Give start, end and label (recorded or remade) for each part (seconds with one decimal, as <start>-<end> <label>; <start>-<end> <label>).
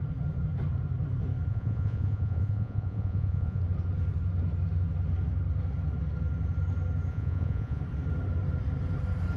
0.0-1.5 recorded; 1.5-3.6 remade; 3.6-7.1 recorded; 7.1-7.8 remade; 7.8-9.4 recorded